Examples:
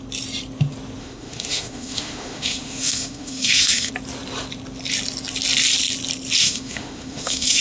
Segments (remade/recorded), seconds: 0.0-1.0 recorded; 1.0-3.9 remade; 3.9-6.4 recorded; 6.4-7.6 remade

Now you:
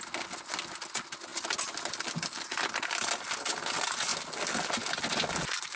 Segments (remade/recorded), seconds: 0.0-5.8 recorded